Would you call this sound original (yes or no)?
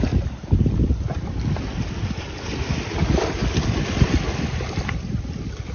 yes